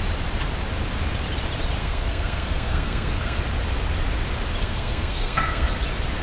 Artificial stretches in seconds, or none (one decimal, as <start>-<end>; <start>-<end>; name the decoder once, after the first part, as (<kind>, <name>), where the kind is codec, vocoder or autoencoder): 1.8-3.4 (codec, SNAC); 4.6-5.7